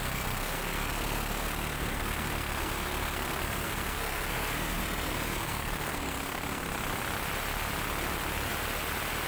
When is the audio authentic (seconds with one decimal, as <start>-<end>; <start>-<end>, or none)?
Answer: 6.6-9.3